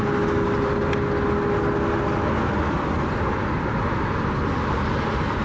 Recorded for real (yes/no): yes